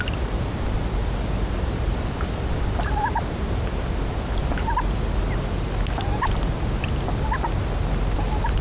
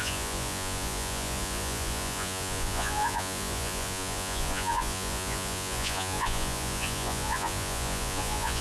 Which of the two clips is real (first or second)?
first